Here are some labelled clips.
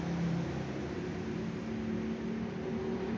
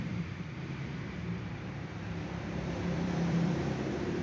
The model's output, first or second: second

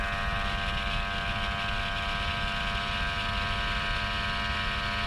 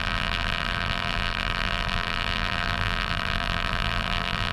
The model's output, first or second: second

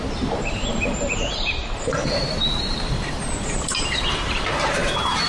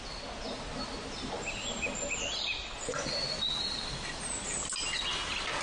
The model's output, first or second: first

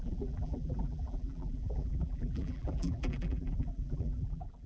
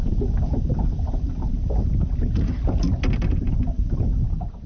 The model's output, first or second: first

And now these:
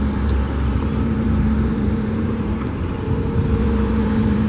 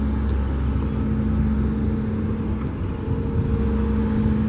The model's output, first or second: first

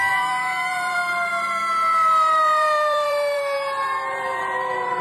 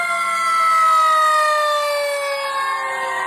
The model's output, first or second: first